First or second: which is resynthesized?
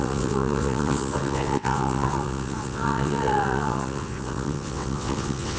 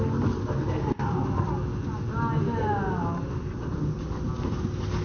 first